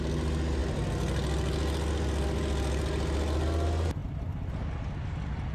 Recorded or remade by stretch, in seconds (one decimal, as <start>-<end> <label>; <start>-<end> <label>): 0.0-5.5 recorded